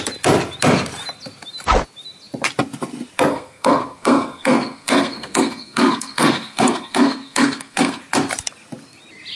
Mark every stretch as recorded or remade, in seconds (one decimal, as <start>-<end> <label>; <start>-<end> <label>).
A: 0.0-3.3 recorded; 3.3-8.0 remade; 8.0-9.4 recorded